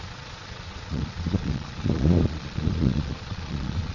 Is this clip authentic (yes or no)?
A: no